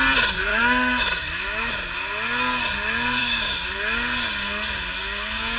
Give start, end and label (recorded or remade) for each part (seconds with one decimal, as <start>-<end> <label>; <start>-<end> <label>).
0.0-0.5 recorded; 0.5-1.7 remade; 1.7-3.2 recorded; 3.2-3.7 remade; 3.7-5.6 recorded